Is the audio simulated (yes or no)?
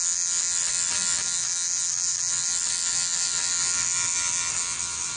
no